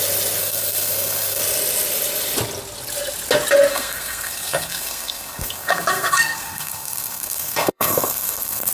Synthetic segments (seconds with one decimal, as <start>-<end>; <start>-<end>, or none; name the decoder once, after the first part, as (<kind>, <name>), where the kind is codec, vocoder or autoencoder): 0.4-1.4 (codec, SNAC); 3.7-8.7